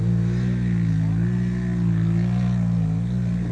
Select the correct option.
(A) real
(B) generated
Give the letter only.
A